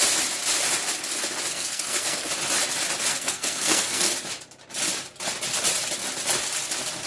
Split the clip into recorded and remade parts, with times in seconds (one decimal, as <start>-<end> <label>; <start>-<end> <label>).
0.0-1.5 recorded; 1.5-2.3 remade; 2.3-3.1 recorded; 3.1-4.1 remade; 4.1-7.1 recorded